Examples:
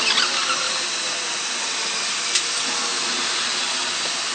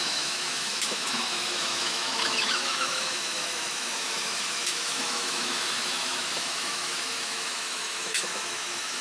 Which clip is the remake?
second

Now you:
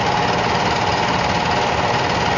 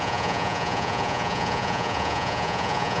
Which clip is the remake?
second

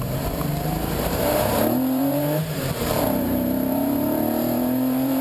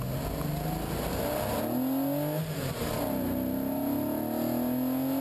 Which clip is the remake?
first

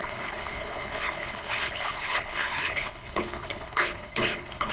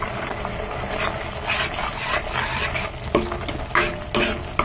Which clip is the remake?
first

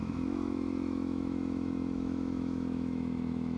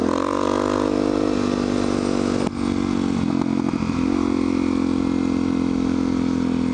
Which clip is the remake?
first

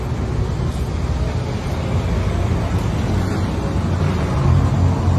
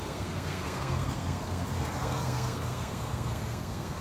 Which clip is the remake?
second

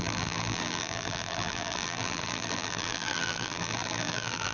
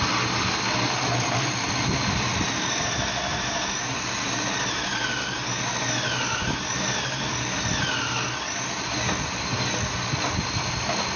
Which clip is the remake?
first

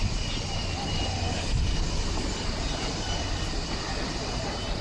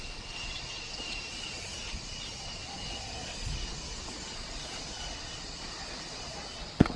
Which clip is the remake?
second